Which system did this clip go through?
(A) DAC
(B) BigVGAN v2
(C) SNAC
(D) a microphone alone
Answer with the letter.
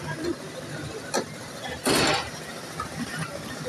D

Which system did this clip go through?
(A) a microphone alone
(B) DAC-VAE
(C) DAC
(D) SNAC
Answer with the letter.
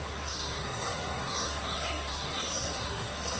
D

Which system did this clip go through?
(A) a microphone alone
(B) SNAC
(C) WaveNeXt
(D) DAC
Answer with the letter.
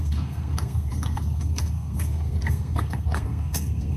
B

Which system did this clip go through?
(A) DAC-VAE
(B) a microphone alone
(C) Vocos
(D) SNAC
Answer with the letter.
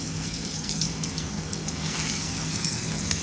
D